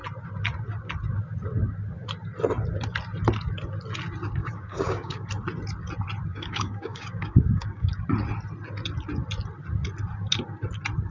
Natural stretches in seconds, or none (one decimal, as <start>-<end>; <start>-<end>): 0.0-4.4; 5.3-6.3; 7.9-11.1